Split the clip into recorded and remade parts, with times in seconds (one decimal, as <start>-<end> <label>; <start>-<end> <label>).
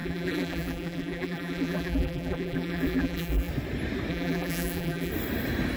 0.0-3.5 remade; 3.5-4.1 recorded; 4.1-5.1 remade; 5.1-5.8 recorded